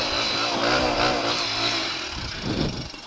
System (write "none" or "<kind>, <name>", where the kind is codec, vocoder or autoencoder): none